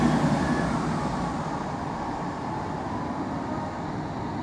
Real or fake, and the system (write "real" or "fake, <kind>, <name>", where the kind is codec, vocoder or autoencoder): real